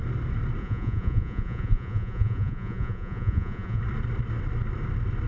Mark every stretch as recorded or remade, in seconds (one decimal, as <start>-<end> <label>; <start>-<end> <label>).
0.0-0.6 recorded; 0.6-3.8 remade; 3.8-5.3 recorded